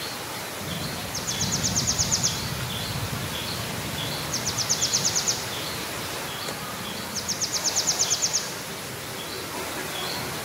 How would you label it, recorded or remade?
recorded